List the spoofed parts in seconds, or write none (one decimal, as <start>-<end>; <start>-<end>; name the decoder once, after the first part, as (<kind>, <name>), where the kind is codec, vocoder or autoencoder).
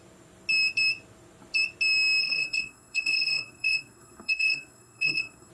2.2-5.5 (codec, SNAC)